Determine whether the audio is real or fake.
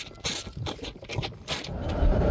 real